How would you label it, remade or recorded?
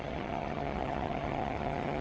remade